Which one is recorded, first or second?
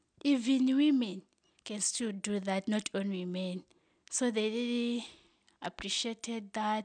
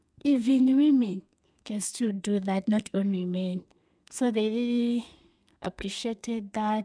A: first